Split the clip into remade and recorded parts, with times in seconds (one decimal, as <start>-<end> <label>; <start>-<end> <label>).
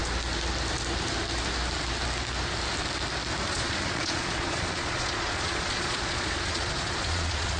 0.0-3.5 recorded; 3.5-7.6 remade